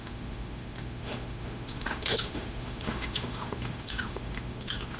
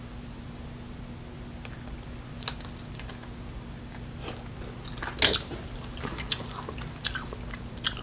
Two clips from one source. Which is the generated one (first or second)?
first